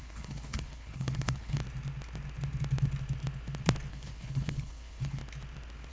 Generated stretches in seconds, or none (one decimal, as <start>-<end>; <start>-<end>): 0.0-1.6; 3.9-5.2